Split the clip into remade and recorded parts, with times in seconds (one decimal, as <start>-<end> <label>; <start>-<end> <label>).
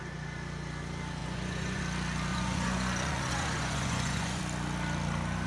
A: 0.0-1.2 recorded; 1.2-1.8 remade; 1.8-2.3 recorded; 2.3-4.4 remade; 4.4-5.5 recorded